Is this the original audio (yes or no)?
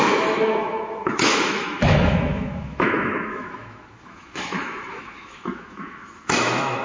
no